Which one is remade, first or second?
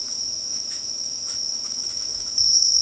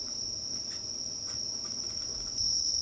first